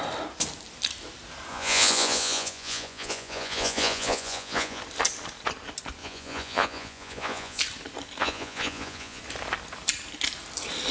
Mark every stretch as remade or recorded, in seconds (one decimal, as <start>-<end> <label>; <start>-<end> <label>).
0.0-1.5 recorded; 1.5-4.8 remade; 4.8-6.0 recorded; 6.0-7.6 remade; 7.6-8.2 recorded; 8.2-9.2 remade; 9.2-10.9 recorded